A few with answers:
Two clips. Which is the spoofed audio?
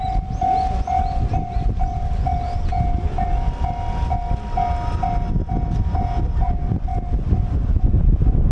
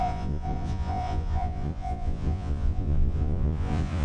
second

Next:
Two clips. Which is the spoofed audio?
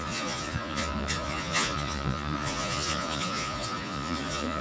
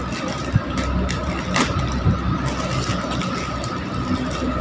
first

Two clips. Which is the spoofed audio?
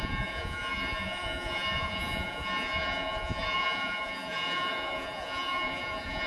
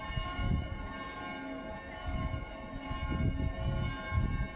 first